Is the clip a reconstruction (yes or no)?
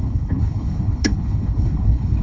yes